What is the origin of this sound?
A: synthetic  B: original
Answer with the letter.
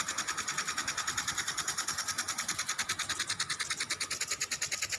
B